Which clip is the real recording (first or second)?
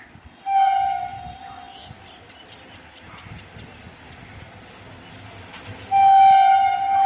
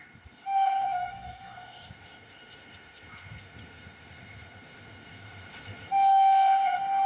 first